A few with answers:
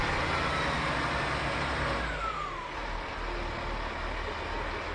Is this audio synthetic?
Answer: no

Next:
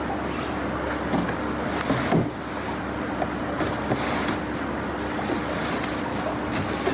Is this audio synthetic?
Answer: no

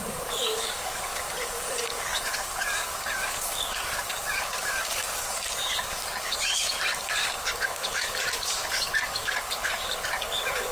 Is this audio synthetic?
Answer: yes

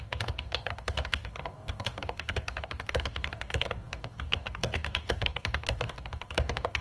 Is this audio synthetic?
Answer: yes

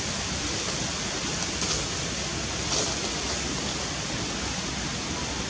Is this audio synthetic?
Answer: no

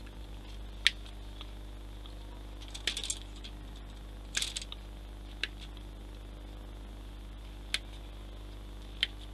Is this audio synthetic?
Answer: no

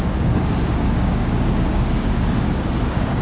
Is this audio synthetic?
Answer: yes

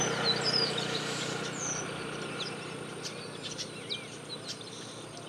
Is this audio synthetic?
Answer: no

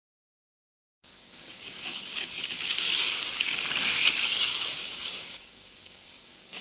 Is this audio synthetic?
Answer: yes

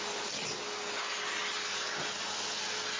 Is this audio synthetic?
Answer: no